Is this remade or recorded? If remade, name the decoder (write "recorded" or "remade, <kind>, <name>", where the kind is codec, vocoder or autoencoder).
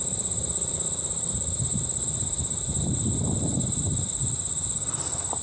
recorded